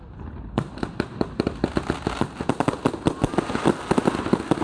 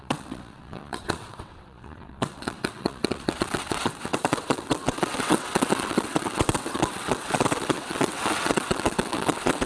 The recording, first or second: first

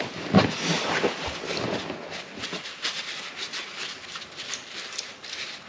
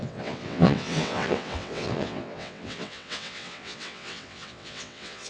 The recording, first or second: first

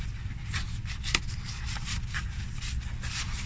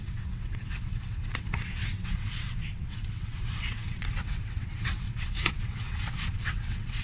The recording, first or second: first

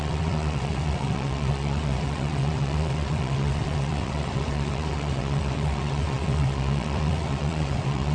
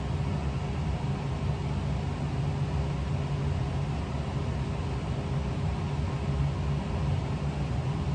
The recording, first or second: second